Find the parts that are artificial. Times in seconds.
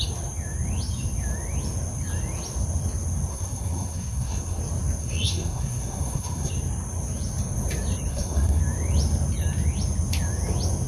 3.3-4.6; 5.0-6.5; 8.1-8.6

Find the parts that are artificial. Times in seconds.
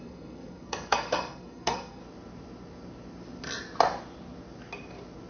0.0-2.0